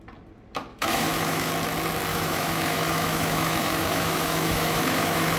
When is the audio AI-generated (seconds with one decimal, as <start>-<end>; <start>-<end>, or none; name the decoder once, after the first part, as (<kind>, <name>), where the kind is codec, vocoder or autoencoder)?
0.7-1.5 (autoencoder, DAC-VAE); 2.1-5.4

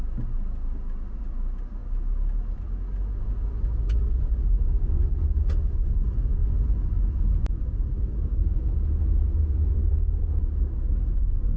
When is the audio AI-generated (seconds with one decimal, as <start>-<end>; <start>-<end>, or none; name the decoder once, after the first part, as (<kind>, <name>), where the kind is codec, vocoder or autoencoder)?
8.5-9.8 (vocoder, Vocos)

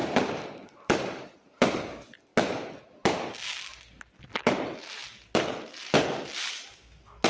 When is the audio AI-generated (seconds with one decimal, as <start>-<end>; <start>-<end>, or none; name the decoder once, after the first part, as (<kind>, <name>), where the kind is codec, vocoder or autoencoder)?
0.0-1.8 (vocoder, BigVGAN v2)

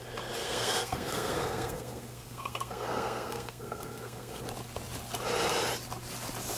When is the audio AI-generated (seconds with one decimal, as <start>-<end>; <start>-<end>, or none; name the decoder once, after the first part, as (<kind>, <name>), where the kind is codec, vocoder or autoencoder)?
0.4-4.4 (codec, SNAC)

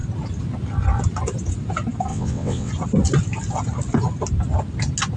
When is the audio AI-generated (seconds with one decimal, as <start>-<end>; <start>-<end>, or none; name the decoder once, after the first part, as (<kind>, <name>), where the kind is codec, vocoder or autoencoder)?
2.1-2.7 (vocoder, WaveNeXt)

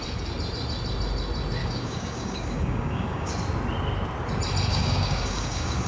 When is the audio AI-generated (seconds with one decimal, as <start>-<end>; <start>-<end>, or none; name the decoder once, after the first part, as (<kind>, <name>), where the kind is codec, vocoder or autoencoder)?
1.6-3.3 (codec, DAC); 4.7-5.9